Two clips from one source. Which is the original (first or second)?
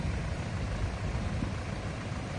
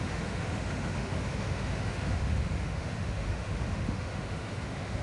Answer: first